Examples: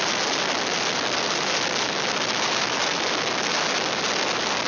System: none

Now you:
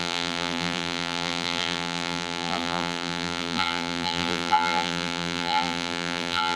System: vocoder, BigVGAN v2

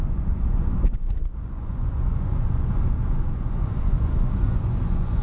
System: vocoder, Vocos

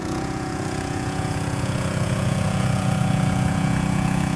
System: vocoder, Vocos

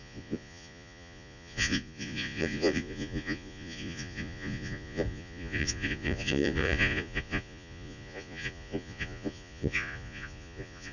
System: vocoder, Vocos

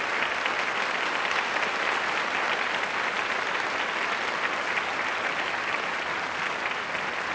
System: none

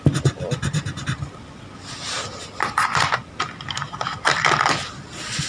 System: none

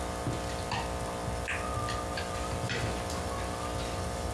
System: none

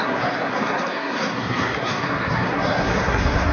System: codec, SNAC